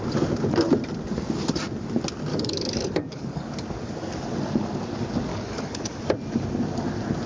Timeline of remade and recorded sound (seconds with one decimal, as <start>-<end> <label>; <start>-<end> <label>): 0.0-2.3 recorded; 2.3-3.5 remade; 3.5-5.3 recorded; 5.3-6.0 remade; 6.0-7.3 recorded